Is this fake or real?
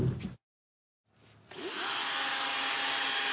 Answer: real